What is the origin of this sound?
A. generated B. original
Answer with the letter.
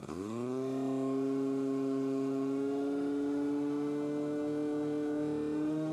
A